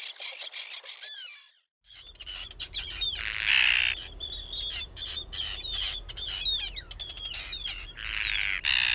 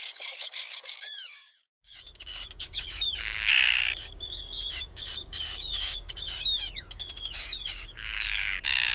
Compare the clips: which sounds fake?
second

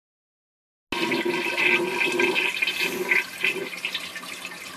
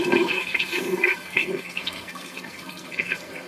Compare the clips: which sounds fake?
second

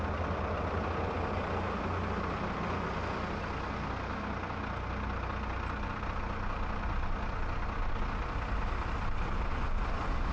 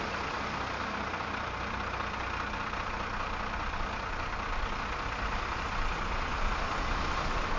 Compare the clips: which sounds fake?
second